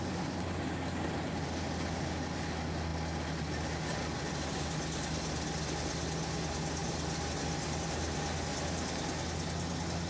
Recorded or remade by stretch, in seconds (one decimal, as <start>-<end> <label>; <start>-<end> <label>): 0.0-10.1 recorded